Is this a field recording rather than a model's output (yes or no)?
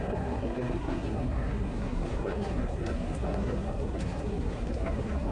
no